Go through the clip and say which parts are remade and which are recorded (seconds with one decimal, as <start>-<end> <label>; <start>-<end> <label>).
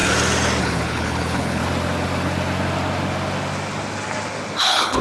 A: 0.0-0.6 recorded; 0.6-1.6 remade; 1.6-4.6 recorded; 4.6-5.0 remade